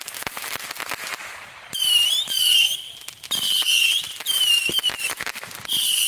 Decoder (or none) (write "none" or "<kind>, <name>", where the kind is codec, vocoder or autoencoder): none